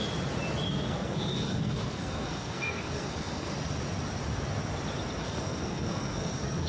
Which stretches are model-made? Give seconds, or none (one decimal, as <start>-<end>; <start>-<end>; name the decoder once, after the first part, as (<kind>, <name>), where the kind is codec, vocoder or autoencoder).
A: 0.7-3.5 (codec, SNAC); 5.2-6.7